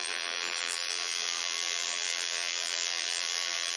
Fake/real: fake